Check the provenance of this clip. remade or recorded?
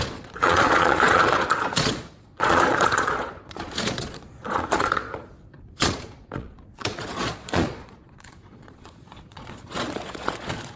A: remade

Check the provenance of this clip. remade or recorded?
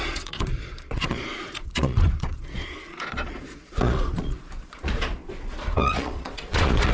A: remade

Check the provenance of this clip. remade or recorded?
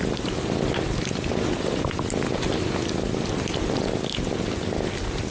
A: recorded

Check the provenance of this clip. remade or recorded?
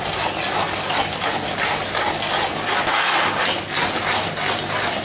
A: recorded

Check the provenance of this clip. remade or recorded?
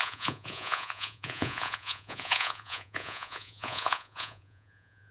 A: remade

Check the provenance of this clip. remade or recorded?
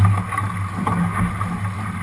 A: recorded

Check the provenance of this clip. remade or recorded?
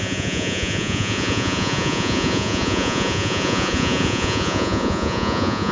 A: remade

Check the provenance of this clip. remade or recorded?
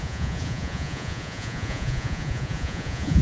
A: remade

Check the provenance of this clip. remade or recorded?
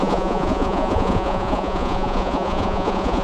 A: remade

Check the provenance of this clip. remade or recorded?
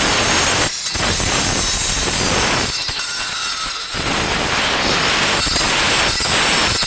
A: recorded